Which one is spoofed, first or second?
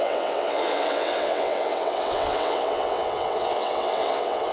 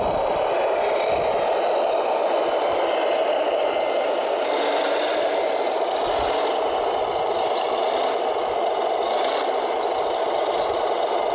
first